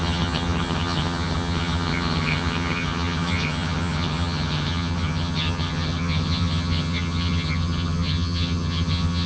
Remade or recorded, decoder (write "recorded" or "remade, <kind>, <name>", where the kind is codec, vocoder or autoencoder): remade, vocoder, HiFi-GAN